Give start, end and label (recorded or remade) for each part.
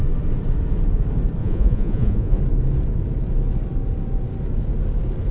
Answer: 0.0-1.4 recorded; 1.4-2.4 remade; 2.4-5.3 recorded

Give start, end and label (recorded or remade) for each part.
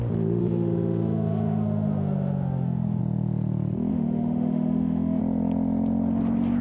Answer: 0.0-0.4 recorded; 0.4-3.0 remade; 3.0-3.9 recorded; 3.9-5.2 remade; 5.2-6.6 recorded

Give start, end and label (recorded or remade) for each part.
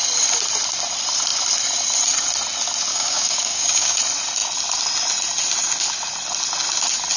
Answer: 0.0-2.9 recorded; 2.9-4.0 remade; 4.0-7.2 recorded